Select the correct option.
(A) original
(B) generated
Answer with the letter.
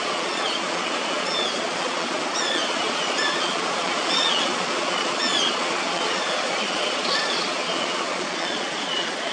B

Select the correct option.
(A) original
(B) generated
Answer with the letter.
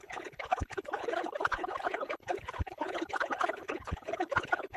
B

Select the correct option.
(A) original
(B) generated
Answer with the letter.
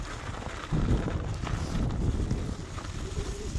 A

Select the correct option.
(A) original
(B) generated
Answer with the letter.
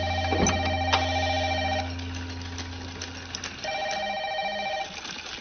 A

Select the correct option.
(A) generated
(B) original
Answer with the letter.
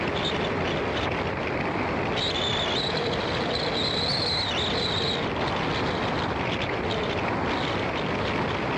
B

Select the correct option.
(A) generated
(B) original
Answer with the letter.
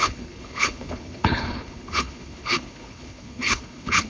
A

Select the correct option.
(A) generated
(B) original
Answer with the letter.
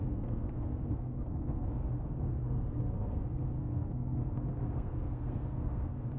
A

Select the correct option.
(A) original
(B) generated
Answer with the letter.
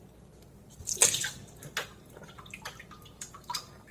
A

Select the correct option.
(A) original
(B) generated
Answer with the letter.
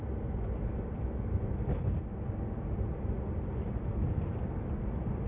A